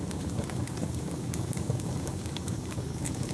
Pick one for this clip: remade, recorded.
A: remade